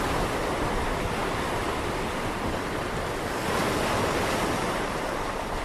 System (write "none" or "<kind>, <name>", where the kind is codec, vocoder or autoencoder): vocoder, BigVGAN v2